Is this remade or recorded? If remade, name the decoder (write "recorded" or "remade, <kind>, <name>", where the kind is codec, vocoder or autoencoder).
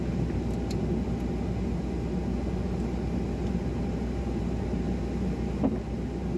recorded